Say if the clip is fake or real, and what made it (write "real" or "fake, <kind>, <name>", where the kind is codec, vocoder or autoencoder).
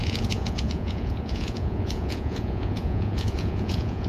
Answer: fake, vocoder, Vocos